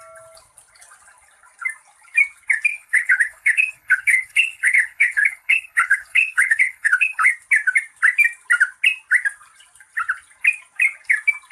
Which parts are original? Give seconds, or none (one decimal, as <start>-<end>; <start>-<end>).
0.0-2.7; 7.3-11.5